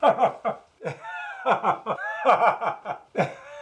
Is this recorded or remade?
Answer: recorded